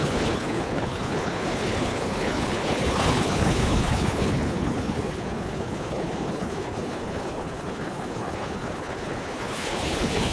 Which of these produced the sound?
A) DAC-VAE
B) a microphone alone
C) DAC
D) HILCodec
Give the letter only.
D